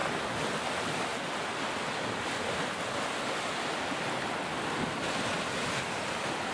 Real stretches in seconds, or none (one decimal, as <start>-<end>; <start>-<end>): 0.7-6.5